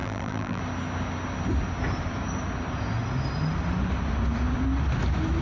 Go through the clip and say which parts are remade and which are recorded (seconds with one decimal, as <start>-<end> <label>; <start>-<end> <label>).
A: 0.0-0.6 remade; 0.6-5.4 recorded